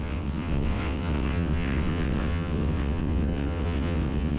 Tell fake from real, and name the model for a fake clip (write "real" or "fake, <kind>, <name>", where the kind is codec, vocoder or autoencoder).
fake, vocoder, WaveNeXt